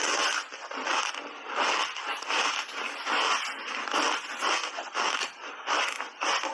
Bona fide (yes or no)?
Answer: yes